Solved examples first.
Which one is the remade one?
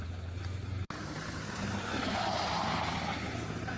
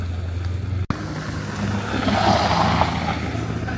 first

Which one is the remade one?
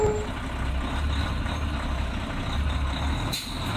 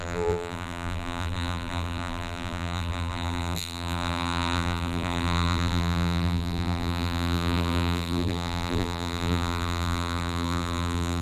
second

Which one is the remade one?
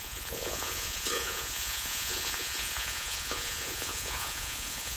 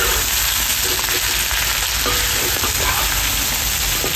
first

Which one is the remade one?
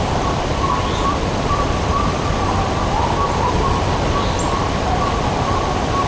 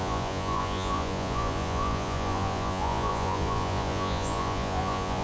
second